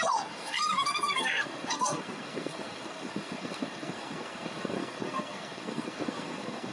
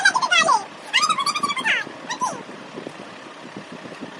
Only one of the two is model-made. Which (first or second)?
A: first